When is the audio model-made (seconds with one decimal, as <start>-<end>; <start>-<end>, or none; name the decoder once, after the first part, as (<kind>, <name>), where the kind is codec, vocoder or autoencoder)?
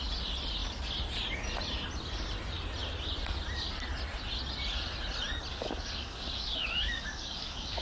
5.5-7.8 (codec, DAC)